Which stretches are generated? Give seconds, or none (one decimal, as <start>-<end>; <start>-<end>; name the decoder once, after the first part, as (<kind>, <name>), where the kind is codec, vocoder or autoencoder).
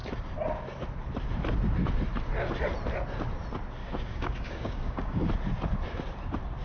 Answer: 3.8-5.3 (codec, DAC)